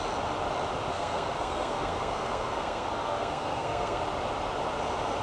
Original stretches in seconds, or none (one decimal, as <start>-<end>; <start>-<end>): 0.0-0.9; 4.0-5.2